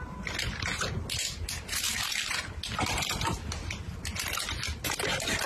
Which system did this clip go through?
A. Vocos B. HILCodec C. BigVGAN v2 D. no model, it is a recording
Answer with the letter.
D